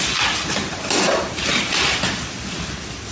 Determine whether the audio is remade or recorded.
recorded